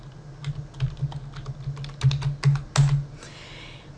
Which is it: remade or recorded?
recorded